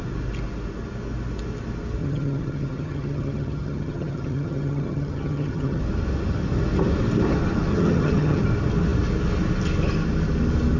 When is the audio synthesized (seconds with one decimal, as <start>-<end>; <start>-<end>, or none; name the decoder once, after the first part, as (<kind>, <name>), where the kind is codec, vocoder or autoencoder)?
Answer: 2.0-5.8 (vocoder, HiFi-GAN); 7.7-8.4

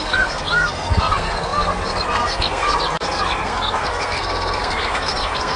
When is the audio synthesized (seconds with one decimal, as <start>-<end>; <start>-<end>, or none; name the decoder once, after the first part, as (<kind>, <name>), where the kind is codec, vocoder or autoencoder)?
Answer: 0.0-5.6 (codec, SNAC)

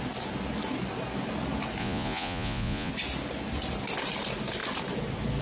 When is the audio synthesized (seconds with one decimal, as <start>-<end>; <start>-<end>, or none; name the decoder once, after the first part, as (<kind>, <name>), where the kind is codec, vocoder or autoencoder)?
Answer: 1.8-2.9 (vocoder, Vocos)

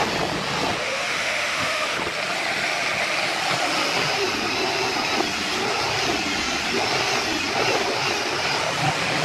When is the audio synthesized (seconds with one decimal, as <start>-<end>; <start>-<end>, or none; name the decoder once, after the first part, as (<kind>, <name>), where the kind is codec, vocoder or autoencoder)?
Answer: 0.8-2.0 (autoencoder, DAC-VAE)

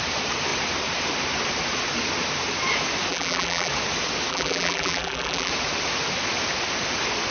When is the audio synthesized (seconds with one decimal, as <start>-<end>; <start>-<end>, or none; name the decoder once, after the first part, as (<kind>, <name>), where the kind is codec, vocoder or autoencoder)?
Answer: 3.1-3.7 (vocoder, BigVGAN v2); 4.3-5.5

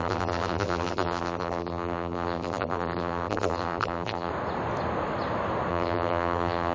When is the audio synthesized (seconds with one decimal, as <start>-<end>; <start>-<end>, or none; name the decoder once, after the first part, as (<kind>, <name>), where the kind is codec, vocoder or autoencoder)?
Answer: 0.0-4.3 (vocoder, BigVGAN v2); 5.7-6.7

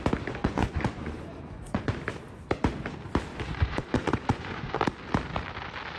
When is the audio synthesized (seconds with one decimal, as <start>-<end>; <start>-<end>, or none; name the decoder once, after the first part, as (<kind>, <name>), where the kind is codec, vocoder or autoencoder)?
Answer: 0.4-1.9 (vocoder, Vocos); 3.3-4.8